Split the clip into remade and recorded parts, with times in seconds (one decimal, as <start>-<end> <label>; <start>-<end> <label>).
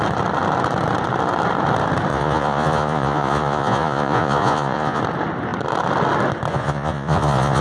0.0-2.1 recorded; 2.1-5.0 remade; 5.0-6.5 recorded; 6.5-7.6 remade